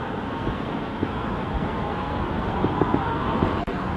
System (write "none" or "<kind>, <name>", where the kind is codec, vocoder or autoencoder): codec, SNAC